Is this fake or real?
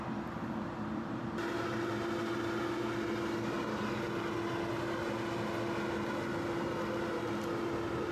real